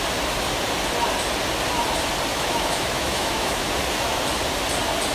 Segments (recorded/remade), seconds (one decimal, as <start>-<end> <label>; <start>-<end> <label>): 0.0-2.3 recorded; 2.3-3.7 remade; 3.7-5.1 recorded